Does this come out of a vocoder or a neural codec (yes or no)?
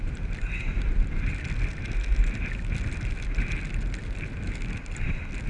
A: no